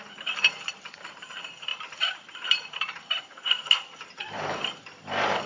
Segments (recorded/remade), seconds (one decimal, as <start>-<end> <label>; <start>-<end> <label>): 0.0-5.5 remade